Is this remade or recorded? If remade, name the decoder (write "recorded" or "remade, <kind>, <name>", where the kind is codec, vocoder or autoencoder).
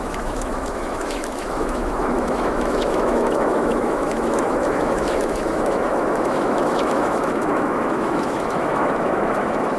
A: remade, autoencoder, DAC-VAE